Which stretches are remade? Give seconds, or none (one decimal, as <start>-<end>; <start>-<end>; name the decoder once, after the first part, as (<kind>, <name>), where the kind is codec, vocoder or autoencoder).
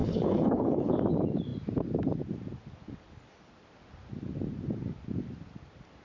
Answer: 0.0-0.9 (codec, HILCodec)